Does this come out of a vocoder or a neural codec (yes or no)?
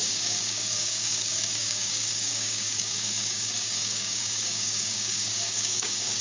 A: yes